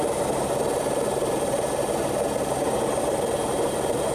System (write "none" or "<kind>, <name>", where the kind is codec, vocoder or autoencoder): none